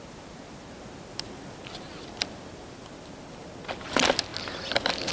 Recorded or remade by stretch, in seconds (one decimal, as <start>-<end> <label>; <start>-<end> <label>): 0.0-5.1 recorded